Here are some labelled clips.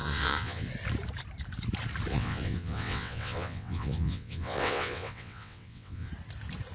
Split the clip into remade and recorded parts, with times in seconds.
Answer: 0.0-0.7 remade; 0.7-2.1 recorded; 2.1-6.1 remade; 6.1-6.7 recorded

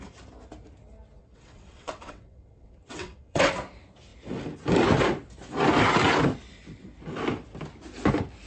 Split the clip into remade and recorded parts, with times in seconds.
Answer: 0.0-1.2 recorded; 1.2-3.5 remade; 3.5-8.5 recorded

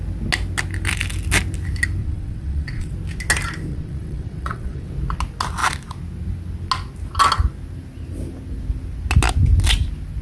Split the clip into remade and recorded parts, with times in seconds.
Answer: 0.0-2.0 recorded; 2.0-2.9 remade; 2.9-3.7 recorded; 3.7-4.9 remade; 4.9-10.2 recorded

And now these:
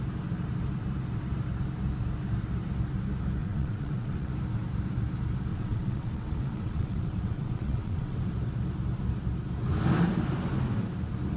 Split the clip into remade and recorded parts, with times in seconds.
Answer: 0.0-3.4 recorded; 3.4-4.3 remade; 4.3-5.5 recorded; 5.5-8.3 remade; 8.3-11.4 recorded

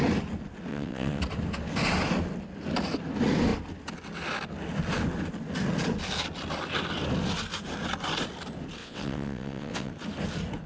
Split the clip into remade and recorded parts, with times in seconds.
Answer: 0.0-0.7 recorded; 0.7-1.2 remade; 1.2-8.8 recorded; 8.8-9.9 remade; 9.9-10.7 recorded